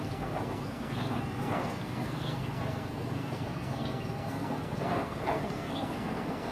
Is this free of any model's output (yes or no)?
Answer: no